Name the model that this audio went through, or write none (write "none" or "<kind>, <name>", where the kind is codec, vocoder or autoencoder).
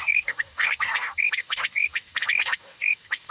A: codec, DAC